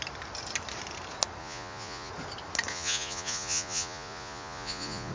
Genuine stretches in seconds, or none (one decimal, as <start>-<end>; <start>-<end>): 0.0-1.4; 2.1-2.7

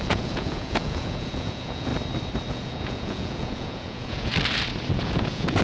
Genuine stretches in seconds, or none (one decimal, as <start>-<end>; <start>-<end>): 1.9-2.5; 4.3-4.9

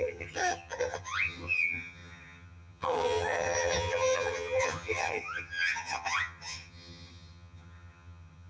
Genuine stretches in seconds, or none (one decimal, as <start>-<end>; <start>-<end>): none

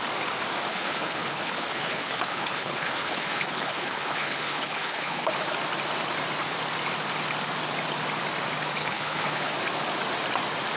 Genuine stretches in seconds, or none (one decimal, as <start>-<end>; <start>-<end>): 0.0-0.7; 5.3-8.8; 9.5-10.8

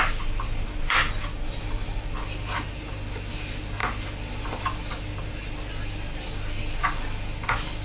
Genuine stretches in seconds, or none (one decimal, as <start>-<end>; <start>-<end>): 0.0-7.8

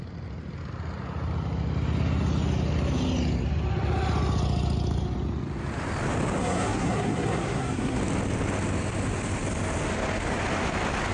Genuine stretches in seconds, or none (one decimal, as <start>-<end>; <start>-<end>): 0.0-6.4; 8.0-11.1